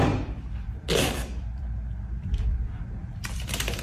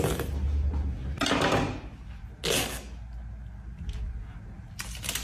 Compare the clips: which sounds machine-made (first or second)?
first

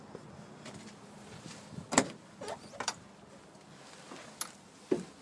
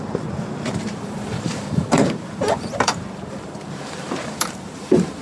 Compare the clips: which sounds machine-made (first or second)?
second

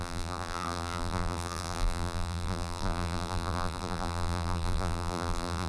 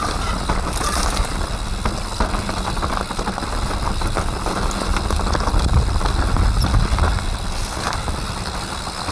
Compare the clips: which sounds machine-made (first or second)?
first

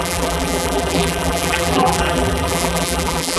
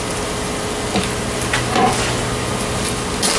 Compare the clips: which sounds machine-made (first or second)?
first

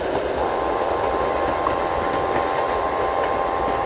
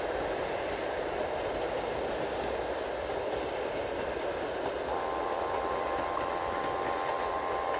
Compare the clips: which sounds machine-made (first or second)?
first